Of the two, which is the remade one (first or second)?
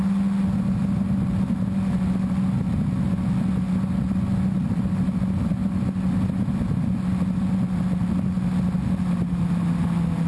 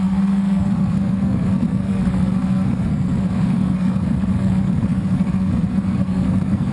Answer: second